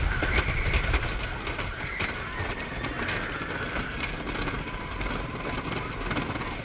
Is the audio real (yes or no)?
yes